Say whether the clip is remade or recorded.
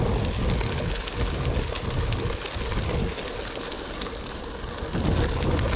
recorded